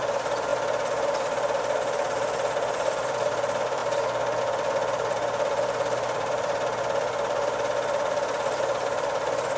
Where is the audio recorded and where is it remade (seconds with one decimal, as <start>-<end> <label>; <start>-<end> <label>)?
0.0-0.5 remade; 0.5-1.6 recorded; 1.6-3.8 remade; 3.8-4.4 recorded; 4.4-9.6 remade